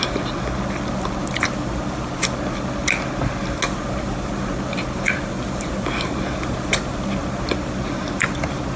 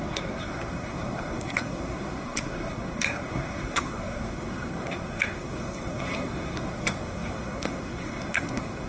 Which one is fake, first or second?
second